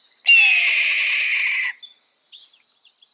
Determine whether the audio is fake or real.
real